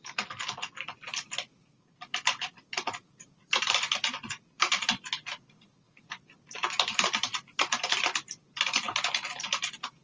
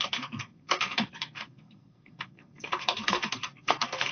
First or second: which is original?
first